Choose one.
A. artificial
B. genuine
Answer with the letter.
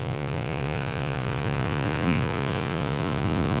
A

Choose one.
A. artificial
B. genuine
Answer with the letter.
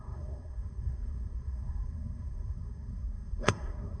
A